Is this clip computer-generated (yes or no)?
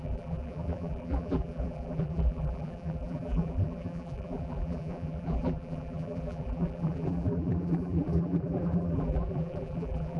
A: yes